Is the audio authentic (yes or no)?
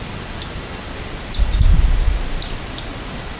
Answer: yes